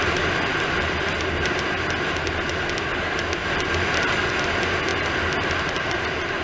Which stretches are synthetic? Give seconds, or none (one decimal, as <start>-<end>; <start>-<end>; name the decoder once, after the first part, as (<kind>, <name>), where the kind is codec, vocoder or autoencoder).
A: none